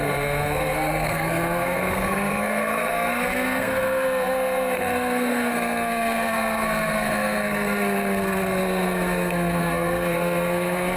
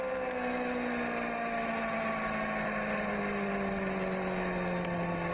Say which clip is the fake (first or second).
first